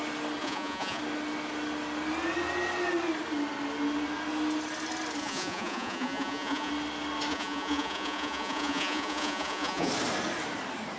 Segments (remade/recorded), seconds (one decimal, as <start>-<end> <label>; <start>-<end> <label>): 0.0-0.4 recorded; 0.4-1.0 remade; 1.0-5.2 recorded; 5.2-6.7 remade; 6.7-7.3 recorded; 7.3-9.9 remade; 9.9-11.0 recorded